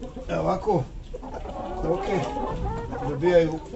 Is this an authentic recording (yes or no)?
yes